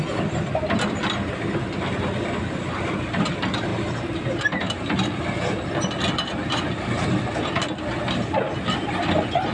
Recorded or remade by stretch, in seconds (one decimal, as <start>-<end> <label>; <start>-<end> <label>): 0.0-9.5 recorded